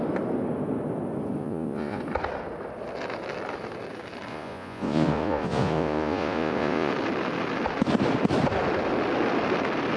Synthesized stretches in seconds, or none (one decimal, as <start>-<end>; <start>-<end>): 1.4-2.0; 4.3-6.9